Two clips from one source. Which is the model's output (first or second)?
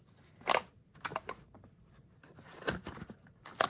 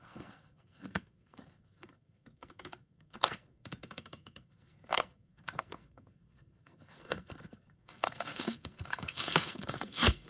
second